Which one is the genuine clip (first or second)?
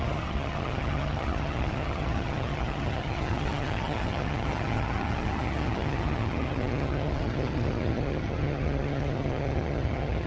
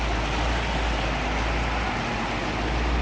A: second